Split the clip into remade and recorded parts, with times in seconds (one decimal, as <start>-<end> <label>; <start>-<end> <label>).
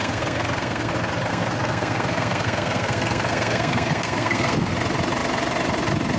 0.0-0.9 remade; 0.9-1.3 recorded; 1.3-4.7 remade; 4.7-6.2 recorded